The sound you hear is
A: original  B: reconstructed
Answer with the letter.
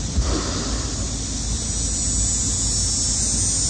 A